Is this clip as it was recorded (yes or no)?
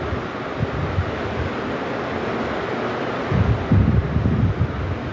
yes